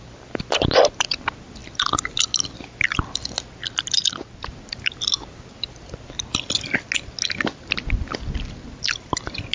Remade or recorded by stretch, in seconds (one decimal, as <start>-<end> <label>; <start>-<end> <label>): 0.0-9.5 recorded